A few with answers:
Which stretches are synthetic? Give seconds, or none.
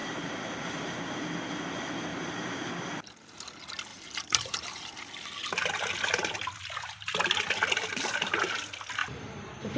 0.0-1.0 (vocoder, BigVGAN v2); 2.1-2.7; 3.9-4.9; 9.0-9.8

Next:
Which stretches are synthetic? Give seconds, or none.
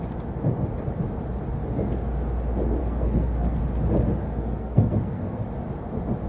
2.8-3.6 (codec, SNAC); 4.2-5.4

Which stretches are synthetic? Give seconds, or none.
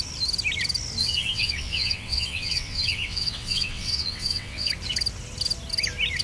1.0-4.7 (vocoder, WaveNeXt)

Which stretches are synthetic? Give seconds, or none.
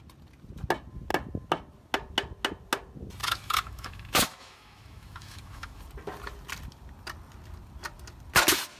3.2-5.8 (autoencoder, DAC-VAE)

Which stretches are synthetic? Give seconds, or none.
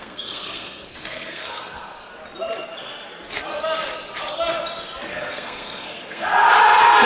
0.0-2.1 (codec, SNAC); 5.1-6.3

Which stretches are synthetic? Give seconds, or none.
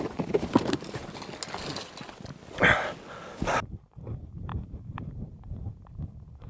0.0-1.0 (vocoder, BigVGAN v2); 3.6-6.5